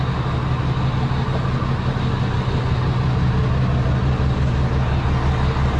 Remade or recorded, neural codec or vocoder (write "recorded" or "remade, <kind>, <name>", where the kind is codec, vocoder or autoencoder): recorded